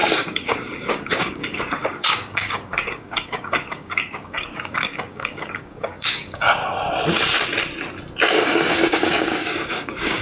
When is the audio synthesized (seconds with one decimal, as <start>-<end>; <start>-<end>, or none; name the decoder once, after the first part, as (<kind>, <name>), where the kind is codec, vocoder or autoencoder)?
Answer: 0.0-6.6 (codec, DAC); 8.4-10.2